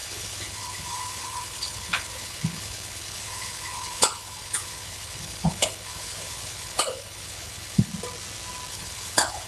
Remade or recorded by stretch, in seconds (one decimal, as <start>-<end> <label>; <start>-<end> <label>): 0.0-7.9 remade; 7.9-8.7 recorded; 8.7-9.5 remade